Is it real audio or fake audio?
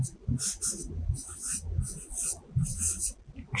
real